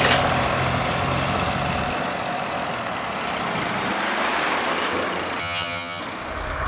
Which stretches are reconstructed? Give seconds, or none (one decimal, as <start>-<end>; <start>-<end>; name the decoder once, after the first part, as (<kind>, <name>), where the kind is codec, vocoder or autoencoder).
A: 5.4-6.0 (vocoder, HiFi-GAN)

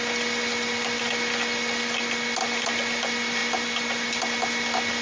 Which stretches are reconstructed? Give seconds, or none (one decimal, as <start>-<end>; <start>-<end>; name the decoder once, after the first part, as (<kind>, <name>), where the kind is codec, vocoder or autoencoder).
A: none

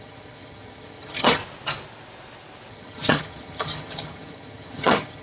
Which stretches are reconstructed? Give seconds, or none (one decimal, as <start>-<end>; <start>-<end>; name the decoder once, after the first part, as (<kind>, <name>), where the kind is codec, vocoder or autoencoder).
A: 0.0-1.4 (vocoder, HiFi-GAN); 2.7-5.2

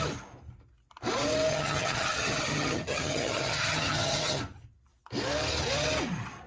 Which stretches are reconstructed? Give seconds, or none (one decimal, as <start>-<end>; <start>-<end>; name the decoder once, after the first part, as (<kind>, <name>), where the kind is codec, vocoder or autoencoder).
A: 1.5-4.4 (vocoder, HiFi-GAN)

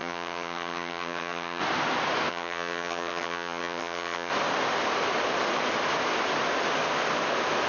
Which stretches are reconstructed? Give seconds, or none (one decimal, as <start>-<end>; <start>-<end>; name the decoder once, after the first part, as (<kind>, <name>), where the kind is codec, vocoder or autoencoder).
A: 0.0-1.6 (vocoder, HiFi-GAN); 2.3-4.3

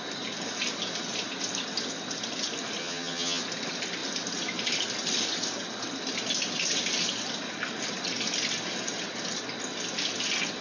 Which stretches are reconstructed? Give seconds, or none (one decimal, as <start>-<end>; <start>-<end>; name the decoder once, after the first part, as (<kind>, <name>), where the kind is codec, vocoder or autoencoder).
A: 2.8-3.4 (vocoder, HiFi-GAN)

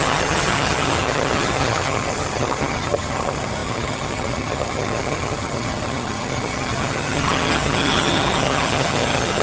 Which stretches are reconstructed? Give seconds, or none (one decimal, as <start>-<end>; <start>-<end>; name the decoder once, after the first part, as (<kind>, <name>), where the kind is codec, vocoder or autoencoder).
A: 0.0-9.4 (vocoder, HiFi-GAN)